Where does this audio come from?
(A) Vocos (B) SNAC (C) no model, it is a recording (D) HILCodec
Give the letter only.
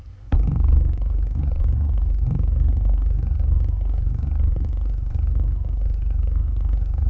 B